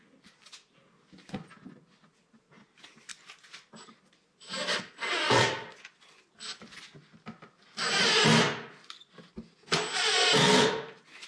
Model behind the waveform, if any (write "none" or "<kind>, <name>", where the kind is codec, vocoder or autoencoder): none